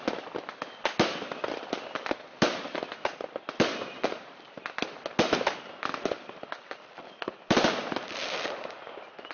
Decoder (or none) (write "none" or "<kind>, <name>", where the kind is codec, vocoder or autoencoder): none